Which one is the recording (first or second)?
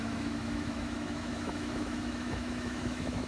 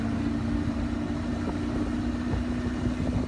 second